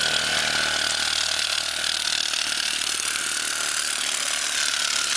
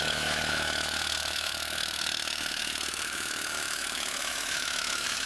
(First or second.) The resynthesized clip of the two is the second